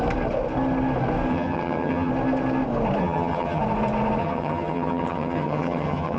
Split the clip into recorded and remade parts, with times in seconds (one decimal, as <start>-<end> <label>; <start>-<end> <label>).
0.0-1.3 recorded; 1.3-2.1 remade; 2.1-3.0 recorded; 3.0-3.6 remade; 3.6-4.2 recorded; 4.2-6.2 remade